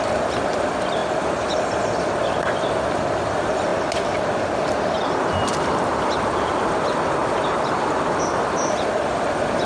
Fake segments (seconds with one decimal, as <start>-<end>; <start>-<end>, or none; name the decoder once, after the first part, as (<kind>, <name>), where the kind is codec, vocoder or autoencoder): 0.0-3.7 (vocoder, BigVGAN v2); 5.2-9.7